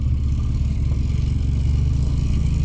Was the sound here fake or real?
real